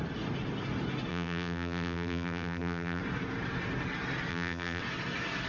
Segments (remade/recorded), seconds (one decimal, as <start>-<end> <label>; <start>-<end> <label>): 0.0-1.1 recorded; 1.1-3.0 remade; 3.0-4.3 recorded; 4.3-4.8 remade; 4.8-5.5 recorded